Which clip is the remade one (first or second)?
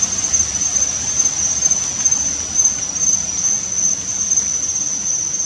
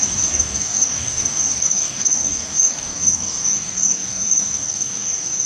second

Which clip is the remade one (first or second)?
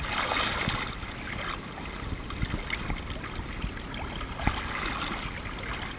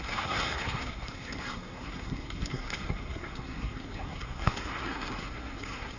second